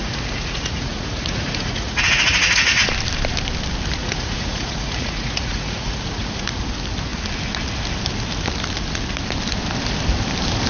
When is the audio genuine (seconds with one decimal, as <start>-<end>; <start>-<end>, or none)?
2.9-4.0; 6.6-10.7